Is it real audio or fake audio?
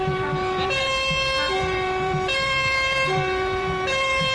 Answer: fake